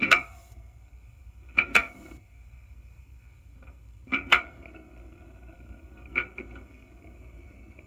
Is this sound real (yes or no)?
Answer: no